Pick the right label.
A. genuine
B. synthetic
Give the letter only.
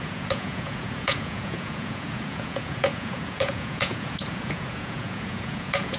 B